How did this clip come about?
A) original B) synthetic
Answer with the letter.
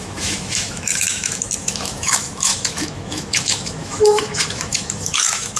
B